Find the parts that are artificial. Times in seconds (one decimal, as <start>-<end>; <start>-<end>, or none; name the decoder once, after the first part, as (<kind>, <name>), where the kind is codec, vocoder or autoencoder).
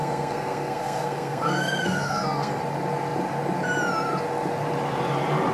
0.0-2.6 (codec, SNAC)